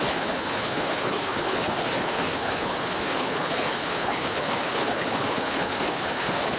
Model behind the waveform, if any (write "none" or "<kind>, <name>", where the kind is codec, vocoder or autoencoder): codec, HILCodec